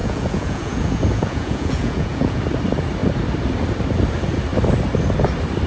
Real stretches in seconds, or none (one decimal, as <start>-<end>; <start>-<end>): 2.4-5.7